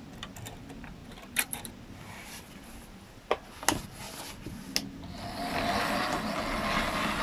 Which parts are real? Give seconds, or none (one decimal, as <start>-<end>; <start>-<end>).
0.0-1.0; 1.7-7.2